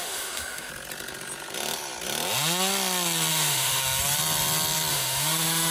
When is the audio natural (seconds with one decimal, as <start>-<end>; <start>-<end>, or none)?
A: 0.7-3.3; 3.8-4.9